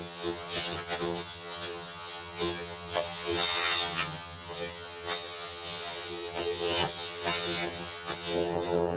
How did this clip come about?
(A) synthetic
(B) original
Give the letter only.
A